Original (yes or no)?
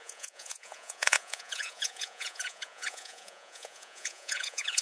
no